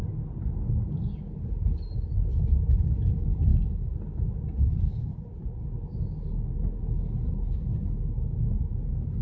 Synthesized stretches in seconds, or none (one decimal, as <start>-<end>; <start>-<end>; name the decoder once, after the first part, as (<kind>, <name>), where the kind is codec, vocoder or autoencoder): none

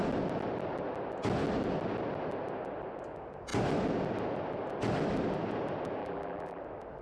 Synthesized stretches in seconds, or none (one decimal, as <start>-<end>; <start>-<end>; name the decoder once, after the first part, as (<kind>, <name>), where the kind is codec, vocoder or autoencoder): 6.0-6.6 (vocoder, BigVGAN v2)